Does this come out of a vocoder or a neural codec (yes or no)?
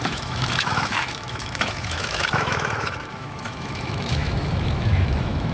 yes